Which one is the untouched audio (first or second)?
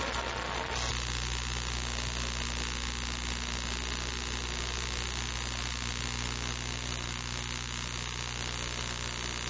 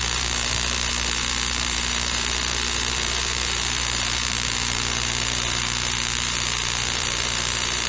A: first